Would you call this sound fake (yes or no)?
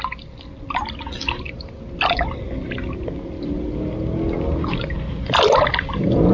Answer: no